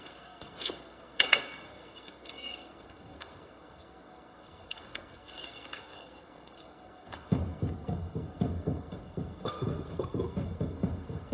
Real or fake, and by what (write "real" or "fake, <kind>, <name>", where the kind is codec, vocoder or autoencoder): fake, codec, SNAC